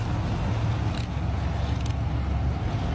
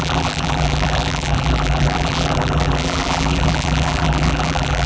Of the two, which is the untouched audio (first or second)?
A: first